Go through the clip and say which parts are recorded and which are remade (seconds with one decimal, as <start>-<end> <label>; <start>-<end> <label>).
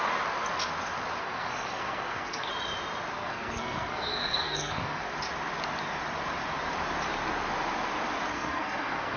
0.0-1.2 recorded; 1.2-2.5 remade; 2.5-3.2 recorded; 3.2-5.0 remade; 5.0-8.3 recorded; 8.3-9.2 remade